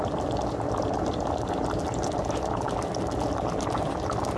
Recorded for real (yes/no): no